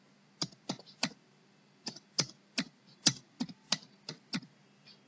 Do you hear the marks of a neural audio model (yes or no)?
no